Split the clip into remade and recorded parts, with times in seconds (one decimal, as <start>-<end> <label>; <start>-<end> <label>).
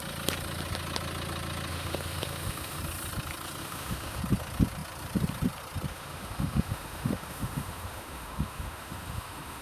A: 0.0-1.7 recorded; 1.7-2.8 remade; 2.8-3.6 recorded; 3.6-4.2 remade; 4.2-5.9 recorded; 5.9-9.6 remade